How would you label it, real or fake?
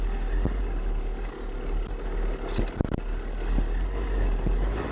real